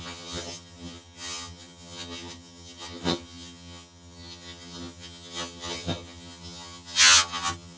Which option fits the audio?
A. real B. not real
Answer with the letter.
B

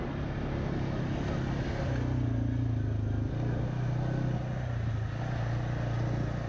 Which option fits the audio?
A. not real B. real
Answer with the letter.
B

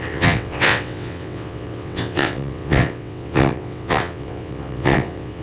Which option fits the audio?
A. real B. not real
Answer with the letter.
B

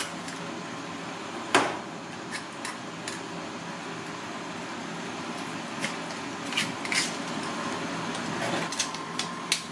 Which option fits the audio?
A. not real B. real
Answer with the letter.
B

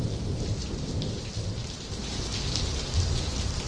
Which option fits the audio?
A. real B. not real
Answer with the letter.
A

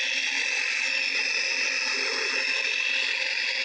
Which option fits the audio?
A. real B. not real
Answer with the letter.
A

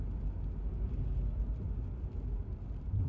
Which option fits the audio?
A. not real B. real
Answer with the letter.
B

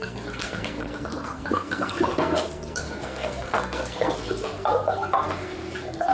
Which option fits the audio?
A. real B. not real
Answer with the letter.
B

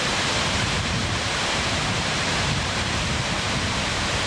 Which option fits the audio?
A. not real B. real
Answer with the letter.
A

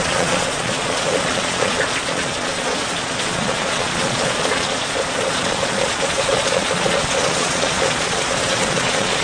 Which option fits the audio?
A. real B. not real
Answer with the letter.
B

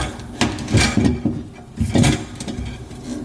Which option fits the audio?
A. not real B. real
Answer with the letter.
B